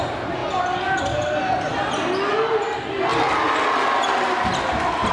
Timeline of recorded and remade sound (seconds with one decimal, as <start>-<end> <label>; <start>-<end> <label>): 0.0-5.1 recorded

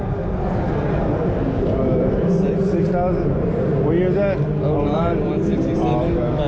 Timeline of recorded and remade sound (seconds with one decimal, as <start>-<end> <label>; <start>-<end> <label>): 0.0-6.5 recorded

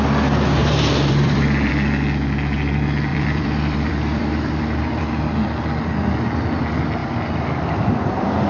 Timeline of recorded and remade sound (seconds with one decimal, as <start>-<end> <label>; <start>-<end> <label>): 0.0-0.6 recorded; 0.6-1.7 remade; 1.7-3.1 recorded; 3.1-5.0 remade; 5.0-7.0 recorded; 7.0-8.5 remade

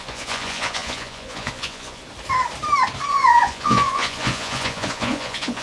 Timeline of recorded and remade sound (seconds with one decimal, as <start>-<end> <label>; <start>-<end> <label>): 0.0-2.0 remade; 2.0-3.1 recorded; 3.1-5.6 remade

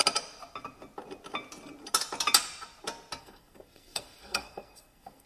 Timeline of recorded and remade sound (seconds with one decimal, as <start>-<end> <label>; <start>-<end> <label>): 0.0-3.2 recorded; 3.2-5.3 remade

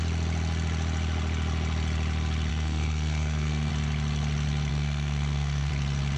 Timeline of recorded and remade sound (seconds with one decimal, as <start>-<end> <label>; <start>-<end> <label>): 0.0-2.5 recorded; 2.5-3.7 remade; 3.7-4.7 recorded; 4.7-5.7 remade; 5.7-6.2 recorded